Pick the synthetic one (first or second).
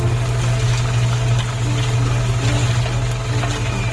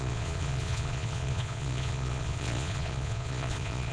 second